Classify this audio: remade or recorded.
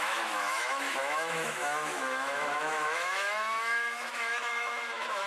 remade